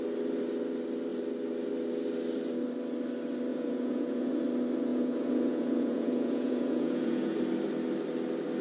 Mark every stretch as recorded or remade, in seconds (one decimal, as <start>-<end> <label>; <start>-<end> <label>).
0.0-3.5 recorded; 3.5-4.3 remade; 4.3-4.9 recorded; 4.9-7.4 remade; 7.4-8.6 recorded